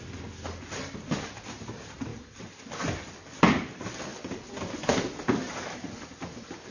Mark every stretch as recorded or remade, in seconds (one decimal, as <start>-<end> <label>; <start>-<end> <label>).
0.0-6.7 recorded